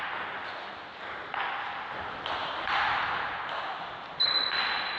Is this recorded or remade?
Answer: recorded